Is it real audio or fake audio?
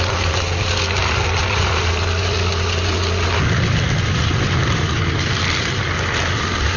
real